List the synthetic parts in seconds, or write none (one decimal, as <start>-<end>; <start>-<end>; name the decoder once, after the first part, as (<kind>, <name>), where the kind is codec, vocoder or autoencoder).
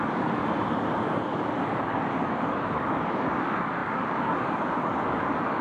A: 0.0-0.4 (codec, DAC); 0.9-5.6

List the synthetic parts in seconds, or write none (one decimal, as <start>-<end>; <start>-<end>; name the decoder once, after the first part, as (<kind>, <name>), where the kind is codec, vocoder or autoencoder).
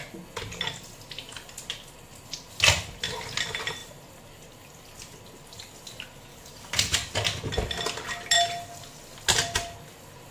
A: 6.3-7.1 (codec, DAC)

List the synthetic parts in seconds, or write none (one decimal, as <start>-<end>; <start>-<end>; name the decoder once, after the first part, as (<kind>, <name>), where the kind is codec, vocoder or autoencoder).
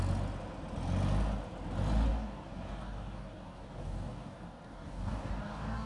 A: 2.1-5.9 (codec, DAC)